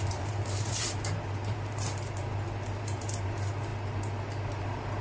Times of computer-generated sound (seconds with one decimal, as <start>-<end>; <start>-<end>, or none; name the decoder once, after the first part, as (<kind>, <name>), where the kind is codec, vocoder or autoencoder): 0.0-3.7 (vocoder, BigVGAN v2); 4.6-5.0